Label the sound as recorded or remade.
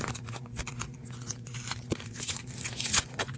remade